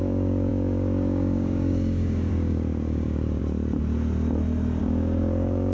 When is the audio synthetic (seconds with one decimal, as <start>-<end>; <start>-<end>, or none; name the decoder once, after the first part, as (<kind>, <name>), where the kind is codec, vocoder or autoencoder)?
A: 0.0-3.4 (codec, DAC); 4.8-5.7